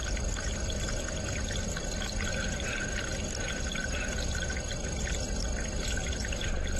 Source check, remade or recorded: recorded